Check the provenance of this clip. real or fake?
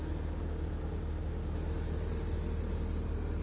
real